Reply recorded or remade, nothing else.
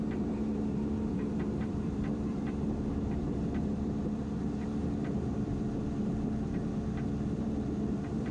remade